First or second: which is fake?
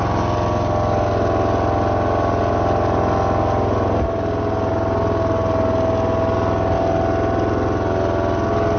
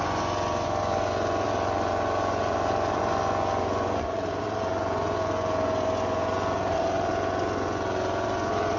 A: second